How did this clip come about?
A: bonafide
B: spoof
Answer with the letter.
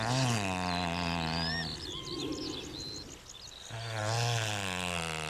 A